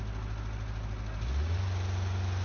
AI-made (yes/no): no